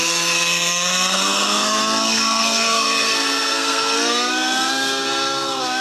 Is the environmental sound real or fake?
fake